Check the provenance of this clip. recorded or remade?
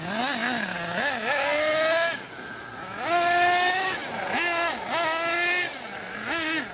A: recorded